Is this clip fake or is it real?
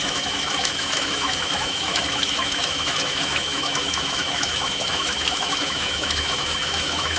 fake